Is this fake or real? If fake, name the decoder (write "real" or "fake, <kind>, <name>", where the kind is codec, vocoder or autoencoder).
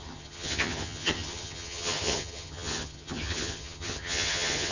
fake, vocoder, HiFi-GAN